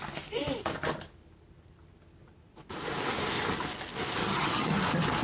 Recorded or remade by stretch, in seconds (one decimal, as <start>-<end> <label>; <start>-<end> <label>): 0.0-4.2 recorded; 4.2-4.8 remade; 4.8-5.2 recorded